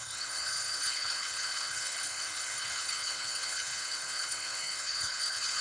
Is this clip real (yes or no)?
no